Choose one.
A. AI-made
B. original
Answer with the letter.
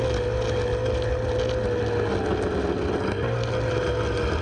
B